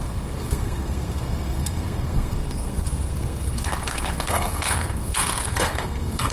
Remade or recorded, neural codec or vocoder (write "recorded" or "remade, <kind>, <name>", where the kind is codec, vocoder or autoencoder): remade, codec, SNAC